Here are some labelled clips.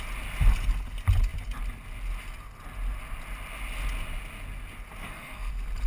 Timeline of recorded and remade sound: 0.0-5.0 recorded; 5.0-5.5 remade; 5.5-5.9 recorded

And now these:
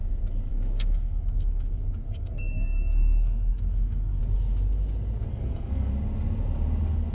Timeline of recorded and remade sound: 0.0-0.5 recorded; 0.5-4.2 remade; 4.2-5.3 recorded; 5.3-5.9 remade; 5.9-7.1 recorded

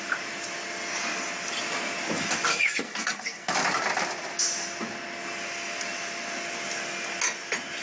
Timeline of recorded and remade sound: 0.0-2.5 recorded; 2.5-3.5 remade; 3.5-7.8 recorded